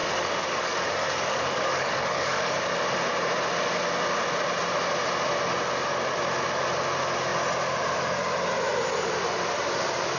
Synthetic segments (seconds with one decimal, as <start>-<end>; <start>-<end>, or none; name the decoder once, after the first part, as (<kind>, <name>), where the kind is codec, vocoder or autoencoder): 0.0-2.6 (codec, DAC)